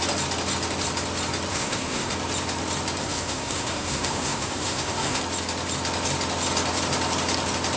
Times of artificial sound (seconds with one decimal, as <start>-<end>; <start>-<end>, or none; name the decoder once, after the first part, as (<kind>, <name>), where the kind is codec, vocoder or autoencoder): 1.5-2.1 (codec, SNAC); 3.0-5.2